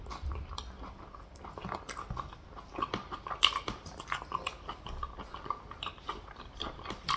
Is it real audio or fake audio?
real